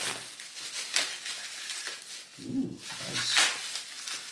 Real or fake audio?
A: real